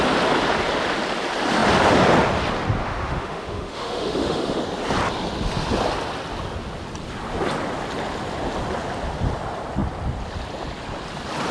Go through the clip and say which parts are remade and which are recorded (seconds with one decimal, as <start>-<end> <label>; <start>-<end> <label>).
0.0-2.8 recorded; 2.8-4.6 remade; 4.6-11.5 recorded